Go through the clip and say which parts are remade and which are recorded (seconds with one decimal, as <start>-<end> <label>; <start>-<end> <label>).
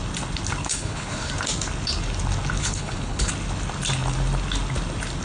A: 0.0-0.6 recorded; 0.6-1.3 remade; 1.3-2.6 recorded; 2.6-3.3 remade; 3.3-5.2 recorded